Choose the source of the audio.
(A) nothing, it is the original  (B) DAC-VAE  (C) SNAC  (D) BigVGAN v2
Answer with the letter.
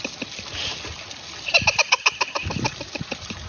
A